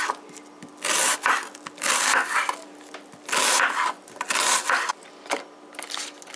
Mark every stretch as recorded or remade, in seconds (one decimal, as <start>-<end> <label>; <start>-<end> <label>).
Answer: 0.0-6.4 recorded